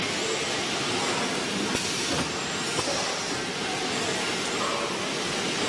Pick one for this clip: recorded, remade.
recorded